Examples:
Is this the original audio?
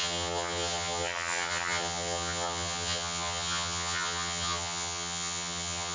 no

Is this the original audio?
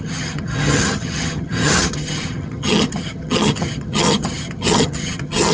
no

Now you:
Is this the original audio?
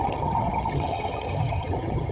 no